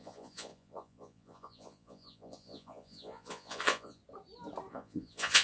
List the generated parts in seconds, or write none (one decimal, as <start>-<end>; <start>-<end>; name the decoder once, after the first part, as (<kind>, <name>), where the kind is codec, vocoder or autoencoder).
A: 0.0-4.0 (vocoder, Vocos); 4.7-5.4